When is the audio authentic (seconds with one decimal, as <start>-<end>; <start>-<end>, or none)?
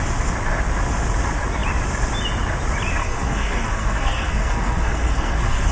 0.0-3.0